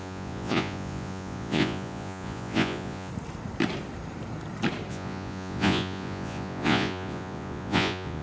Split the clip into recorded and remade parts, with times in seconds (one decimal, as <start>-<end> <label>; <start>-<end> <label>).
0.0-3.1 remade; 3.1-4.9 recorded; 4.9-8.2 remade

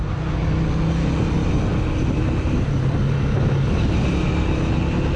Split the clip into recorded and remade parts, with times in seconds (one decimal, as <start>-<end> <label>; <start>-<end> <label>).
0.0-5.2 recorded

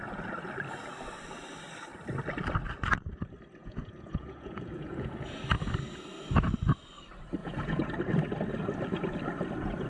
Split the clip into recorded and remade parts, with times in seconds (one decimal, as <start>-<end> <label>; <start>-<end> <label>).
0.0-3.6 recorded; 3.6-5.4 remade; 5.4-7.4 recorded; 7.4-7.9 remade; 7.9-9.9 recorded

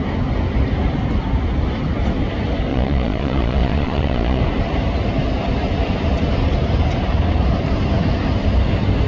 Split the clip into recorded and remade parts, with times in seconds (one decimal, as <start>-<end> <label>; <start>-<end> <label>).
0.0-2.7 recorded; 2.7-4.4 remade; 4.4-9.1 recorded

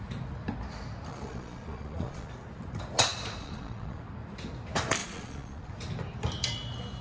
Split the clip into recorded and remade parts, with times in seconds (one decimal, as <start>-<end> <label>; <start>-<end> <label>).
0.0-1.1 recorded; 1.1-2.3 remade; 2.3-3.4 recorded; 3.4-4.0 remade; 4.0-5.0 recorded; 5.0-5.7 remade; 5.7-7.0 recorded

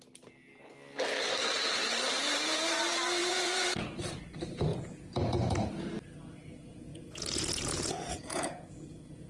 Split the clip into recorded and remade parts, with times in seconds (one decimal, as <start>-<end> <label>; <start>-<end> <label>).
0.0-3.2 recorded; 3.2-3.8 remade; 3.8-4.7 recorded; 4.7-5.7 remade; 5.7-6.9 recorded; 6.9-9.3 remade

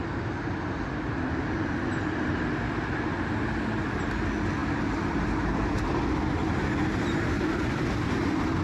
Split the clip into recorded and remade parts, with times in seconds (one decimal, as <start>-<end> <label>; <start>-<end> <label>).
0.0-8.6 recorded

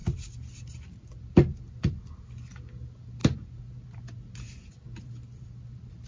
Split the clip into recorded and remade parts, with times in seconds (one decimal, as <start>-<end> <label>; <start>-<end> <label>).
0.0-6.1 recorded